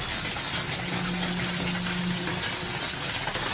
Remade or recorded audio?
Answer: recorded